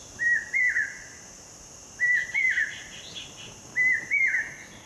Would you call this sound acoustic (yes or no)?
yes